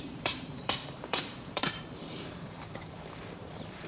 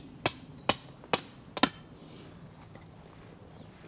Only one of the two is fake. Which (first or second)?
first